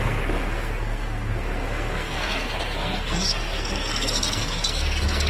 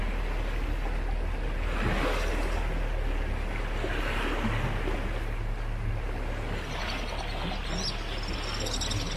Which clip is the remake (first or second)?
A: first